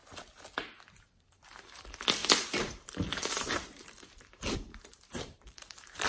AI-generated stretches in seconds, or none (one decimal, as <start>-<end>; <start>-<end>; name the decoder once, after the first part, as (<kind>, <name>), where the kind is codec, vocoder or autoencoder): 1.0-6.1 (vocoder, BigVGAN v2)

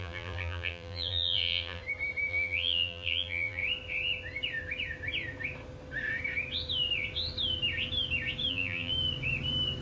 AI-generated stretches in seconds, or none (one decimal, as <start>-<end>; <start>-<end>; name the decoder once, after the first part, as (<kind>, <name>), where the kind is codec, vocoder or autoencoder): 0.0-1.8 (vocoder, BigVGAN v2); 2.3-3.6; 8.5-8.9

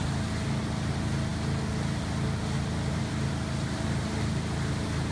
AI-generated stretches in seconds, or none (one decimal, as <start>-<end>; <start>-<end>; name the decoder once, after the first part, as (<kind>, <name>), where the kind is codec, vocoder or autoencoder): none

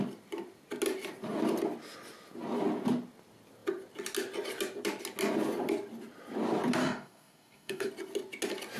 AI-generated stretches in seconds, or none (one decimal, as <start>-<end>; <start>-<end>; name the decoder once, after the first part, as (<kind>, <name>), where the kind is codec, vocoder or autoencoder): 6.8-7.9 (codec, DAC)

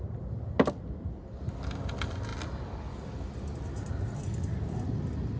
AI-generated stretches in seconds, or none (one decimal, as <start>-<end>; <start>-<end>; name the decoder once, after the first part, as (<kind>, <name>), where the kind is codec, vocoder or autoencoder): none

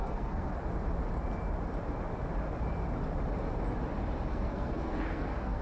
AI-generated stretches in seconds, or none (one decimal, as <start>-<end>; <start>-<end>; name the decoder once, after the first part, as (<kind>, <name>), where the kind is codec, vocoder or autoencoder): 0.0-0.5 (codec, SNAC); 4.3-5.6